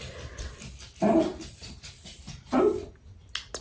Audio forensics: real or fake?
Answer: real